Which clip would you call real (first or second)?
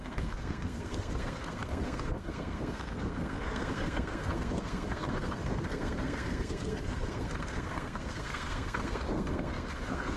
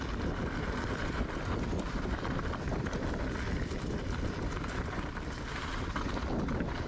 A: second